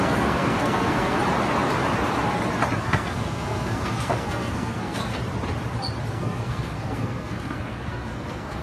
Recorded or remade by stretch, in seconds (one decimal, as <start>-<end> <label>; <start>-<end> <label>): 0.0-1.2 remade; 1.2-2.8 recorded; 2.8-5.2 remade; 5.2-6.1 recorded; 6.1-8.6 remade

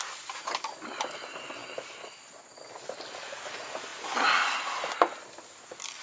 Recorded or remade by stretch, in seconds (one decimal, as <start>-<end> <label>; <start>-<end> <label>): 0.0-6.0 recorded

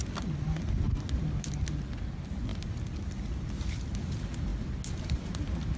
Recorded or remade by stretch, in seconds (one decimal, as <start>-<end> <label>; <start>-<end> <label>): 0.0-5.8 recorded

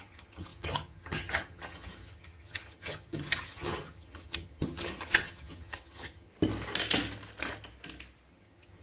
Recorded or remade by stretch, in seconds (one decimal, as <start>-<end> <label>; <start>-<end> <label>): 0.0-6.3 remade; 6.3-8.3 recorded; 8.3-8.8 remade

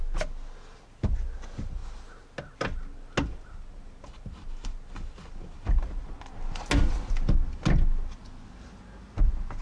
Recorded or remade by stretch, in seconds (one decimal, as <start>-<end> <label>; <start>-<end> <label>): 0.0-9.6 recorded